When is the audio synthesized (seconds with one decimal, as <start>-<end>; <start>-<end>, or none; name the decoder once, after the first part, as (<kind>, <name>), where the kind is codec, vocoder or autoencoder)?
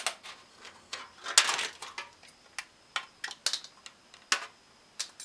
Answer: 0.5-1.0 (codec, SNAC)